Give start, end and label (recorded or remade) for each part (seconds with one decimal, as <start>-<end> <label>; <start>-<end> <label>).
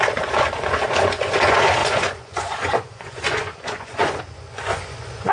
0.0-5.3 remade